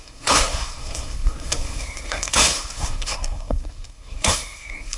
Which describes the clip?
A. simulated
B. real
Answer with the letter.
A